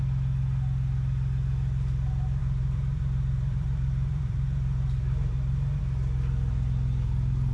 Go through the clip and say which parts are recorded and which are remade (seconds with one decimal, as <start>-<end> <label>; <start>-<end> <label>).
0.0-2.4 recorded; 2.4-5.8 remade; 5.8-7.5 recorded